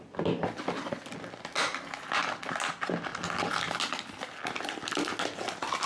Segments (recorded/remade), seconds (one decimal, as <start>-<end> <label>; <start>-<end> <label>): 0.0-5.9 recorded